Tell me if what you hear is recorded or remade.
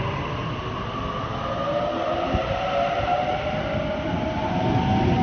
recorded